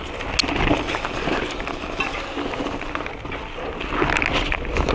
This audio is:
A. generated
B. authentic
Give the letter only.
B